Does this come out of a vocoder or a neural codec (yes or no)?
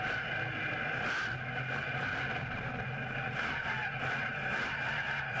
no